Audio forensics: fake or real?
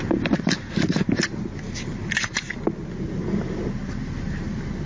real